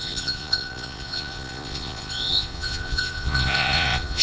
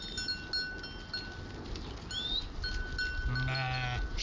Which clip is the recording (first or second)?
second